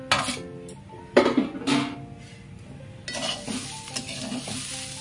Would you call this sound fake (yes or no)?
no